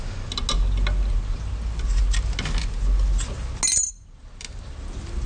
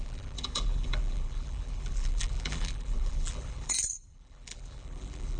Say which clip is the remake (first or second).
second